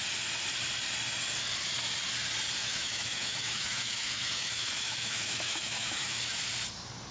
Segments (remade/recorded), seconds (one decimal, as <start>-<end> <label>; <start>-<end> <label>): 0.0-2.6 recorded; 2.6-6.4 remade; 6.4-7.1 recorded